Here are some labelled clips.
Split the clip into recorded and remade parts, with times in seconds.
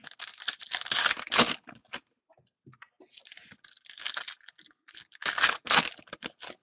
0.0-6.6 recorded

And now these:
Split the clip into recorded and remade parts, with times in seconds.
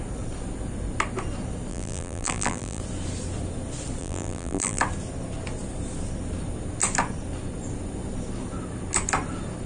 0.0-1.7 recorded; 1.7-2.8 remade; 2.8-4.0 recorded; 4.0-4.8 remade; 4.8-9.7 recorded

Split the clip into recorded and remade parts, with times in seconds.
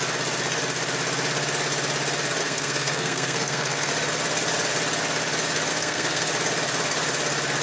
0.0-2.4 recorded; 2.4-3.9 remade; 3.9-5.7 recorded; 5.7-6.3 remade; 6.3-7.6 recorded